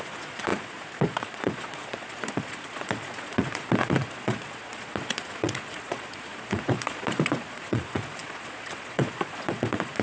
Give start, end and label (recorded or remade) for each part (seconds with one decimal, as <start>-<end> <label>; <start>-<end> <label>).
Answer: 0.0-10.0 remade